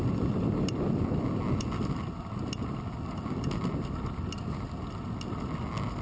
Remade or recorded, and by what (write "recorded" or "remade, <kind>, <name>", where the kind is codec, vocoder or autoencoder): recorded